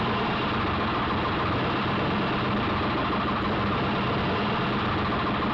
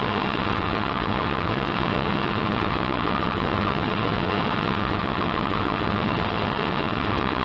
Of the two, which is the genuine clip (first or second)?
first